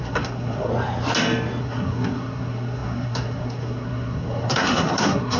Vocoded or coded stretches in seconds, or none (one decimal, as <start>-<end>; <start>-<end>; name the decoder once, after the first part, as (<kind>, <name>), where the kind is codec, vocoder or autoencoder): 0.0-0.7 (codec, SNAC); 1.6-5.4